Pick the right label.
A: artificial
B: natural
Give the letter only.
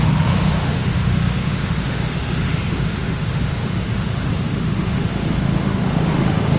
A